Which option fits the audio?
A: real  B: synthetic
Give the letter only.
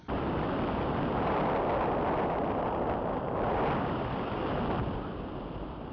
A